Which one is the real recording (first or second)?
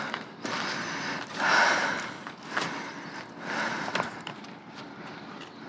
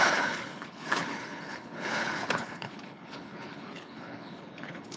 first